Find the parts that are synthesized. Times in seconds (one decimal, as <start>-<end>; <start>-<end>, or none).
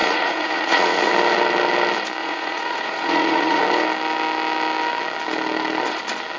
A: 0.0-1.1; 2.2-3.6